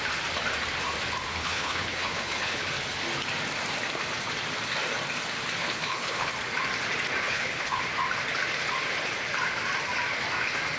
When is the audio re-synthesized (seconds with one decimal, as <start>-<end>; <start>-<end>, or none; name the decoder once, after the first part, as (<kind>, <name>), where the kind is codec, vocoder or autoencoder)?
1.3-2.6 (codec, HILCodec); 5.6-6.3; 7.2-7.8